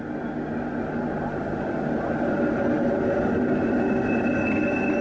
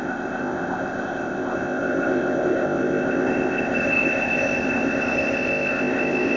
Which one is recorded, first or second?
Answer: first